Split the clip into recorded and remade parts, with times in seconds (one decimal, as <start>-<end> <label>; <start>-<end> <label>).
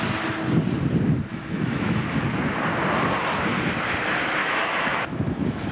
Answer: 0.0-1.3 recorded; 1.3-2.0 remade; 2.0-4.4 recorded; 4.4-5.7 remade